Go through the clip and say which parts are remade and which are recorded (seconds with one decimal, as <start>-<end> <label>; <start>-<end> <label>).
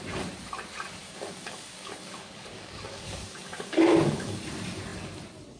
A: 0.0-1.0 recorded; 1.0-4.4 remade; 4.4-5.6 recorded